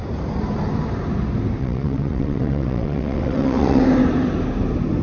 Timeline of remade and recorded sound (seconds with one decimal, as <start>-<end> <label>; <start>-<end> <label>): 0.0-1.6 recorded; 1.6-3.8 remade; 3.8-5.0 recorded

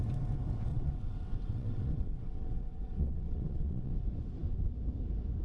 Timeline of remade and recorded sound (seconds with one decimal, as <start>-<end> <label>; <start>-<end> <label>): 0.0-0.7 recorded; 0.7-3.9 remade; 3.9-5.4 recorded